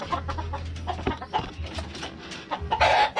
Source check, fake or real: real